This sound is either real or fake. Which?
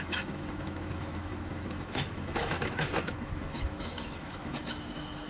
fake